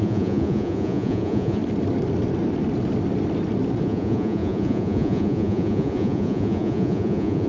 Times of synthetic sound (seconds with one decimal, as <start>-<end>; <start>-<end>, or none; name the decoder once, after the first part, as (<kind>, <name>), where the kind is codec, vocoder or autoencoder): 0.0-1.6 (vocoder, Vocos); 3.8-7.5